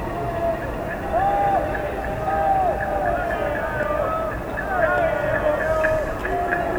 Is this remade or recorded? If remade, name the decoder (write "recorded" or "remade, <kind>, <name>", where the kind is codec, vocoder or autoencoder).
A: recorded